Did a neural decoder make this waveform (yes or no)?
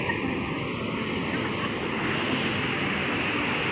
no